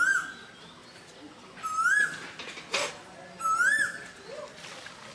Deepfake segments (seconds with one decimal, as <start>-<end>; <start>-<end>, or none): none